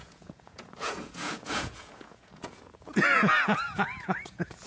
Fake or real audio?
fake